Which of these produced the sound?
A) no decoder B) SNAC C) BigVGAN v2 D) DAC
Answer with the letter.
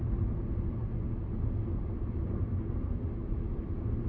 A